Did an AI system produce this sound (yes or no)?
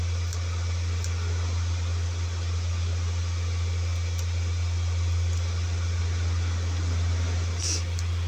no